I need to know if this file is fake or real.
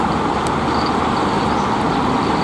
real